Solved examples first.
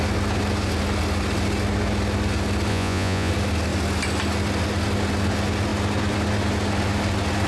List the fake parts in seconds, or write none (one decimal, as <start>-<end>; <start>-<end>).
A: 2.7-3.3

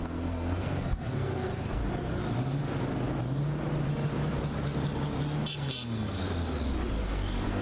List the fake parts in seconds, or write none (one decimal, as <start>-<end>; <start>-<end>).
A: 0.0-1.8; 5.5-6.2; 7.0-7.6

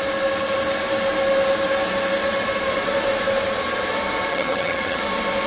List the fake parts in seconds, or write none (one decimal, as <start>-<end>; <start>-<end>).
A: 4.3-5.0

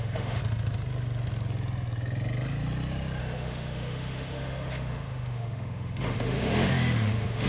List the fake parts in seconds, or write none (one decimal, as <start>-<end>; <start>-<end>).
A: 0.0-0.4; 3.2-7.5